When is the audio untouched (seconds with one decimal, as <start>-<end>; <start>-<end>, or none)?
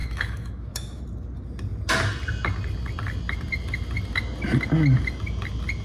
1.0-5.8